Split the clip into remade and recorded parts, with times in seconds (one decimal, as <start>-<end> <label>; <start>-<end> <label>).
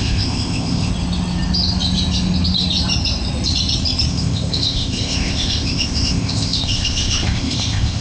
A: 0.0-0.9 remade; 0.9-4.1 recorded; 4.1-8.0 remade